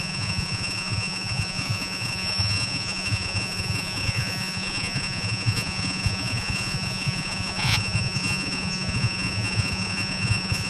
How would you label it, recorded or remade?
remade